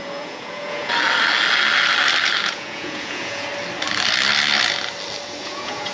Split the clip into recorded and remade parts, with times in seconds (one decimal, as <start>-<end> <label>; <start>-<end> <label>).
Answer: 0.0-0.9 remade; 0.9-2.5 recorded; 2.5-3.5 remade; 3.5-5.4 recorded; 5.4-5.9 remade